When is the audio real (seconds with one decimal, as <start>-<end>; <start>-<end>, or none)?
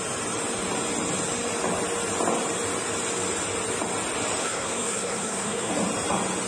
0.0-4.4; 5.7-6.5